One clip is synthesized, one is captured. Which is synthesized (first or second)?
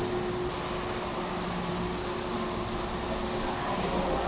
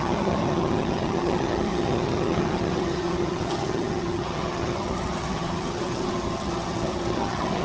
second